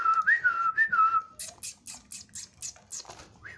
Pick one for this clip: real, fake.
real